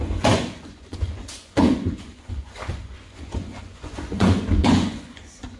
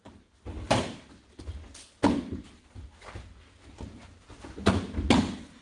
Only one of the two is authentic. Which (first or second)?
second